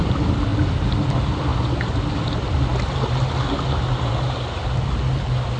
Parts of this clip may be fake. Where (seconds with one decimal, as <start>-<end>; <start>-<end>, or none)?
none